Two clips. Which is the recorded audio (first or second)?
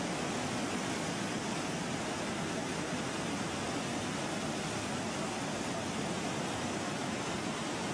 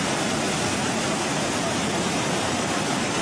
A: first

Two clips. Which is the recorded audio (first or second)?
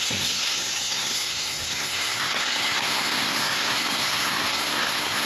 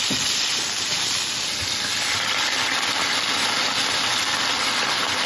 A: second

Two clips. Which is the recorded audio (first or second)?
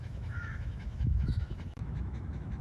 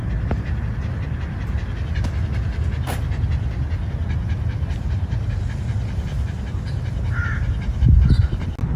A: second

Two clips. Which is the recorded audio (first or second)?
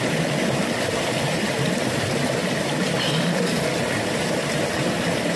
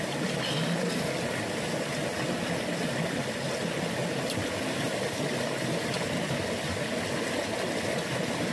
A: second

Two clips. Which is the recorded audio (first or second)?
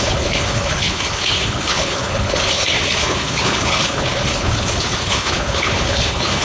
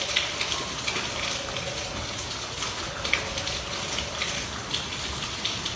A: second